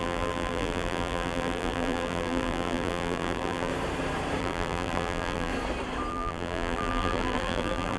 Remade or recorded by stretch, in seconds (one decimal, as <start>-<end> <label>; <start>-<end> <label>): 0.0-3.7 remade; 3.7-4.4 recorded; 4.4-5.5 remade; 5.5-6.1 recorded; 6.1-8.0 remade